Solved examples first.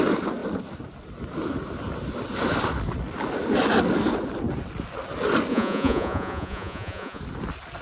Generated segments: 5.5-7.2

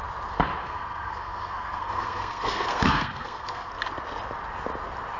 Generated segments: 0.6-3.7

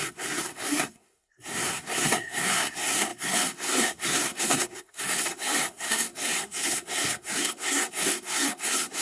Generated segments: 0.0-9.0

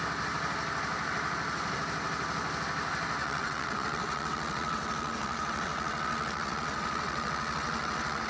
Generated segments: 3.2-8.3

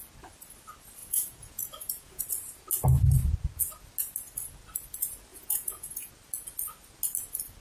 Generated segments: 1.0-2.2; 5.3-6.1

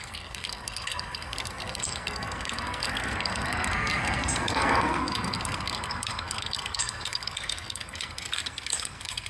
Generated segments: 0.0-9.3